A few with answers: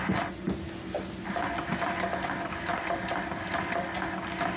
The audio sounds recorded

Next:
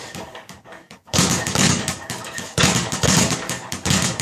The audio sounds remade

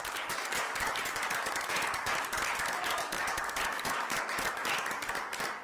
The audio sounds remade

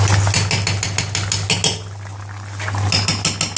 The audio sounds recorded